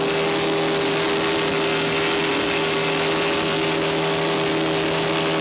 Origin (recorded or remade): recorded